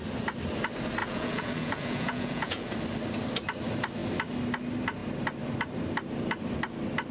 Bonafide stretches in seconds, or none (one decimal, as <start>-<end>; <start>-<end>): 0.0-1.0; 2.7-7.1